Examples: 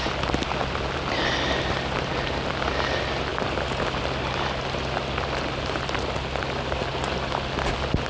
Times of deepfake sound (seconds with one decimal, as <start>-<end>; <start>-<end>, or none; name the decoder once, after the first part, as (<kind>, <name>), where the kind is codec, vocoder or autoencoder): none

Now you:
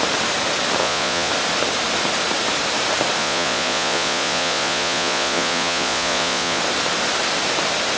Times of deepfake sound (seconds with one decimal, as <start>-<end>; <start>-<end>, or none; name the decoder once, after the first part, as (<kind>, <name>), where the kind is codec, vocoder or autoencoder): 0.8-1.3 (vocoder, Vocos); 3.2-6.6

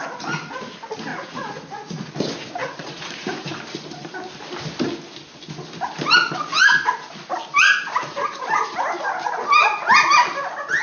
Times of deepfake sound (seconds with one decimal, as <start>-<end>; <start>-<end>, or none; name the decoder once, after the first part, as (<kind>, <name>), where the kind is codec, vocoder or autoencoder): 1.1-2.1 (vocoder, Vocos); 2.6-3.6; 8.0-8.6